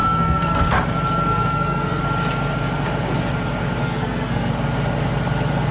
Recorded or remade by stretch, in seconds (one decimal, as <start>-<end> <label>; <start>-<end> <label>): 0.0-0.7 remade; 0.7-1.3 recorded; 1.3-2.0 remade; 2.0-3.8 recorded; 3.8-4.5 remade; 4.5-5.7 recorded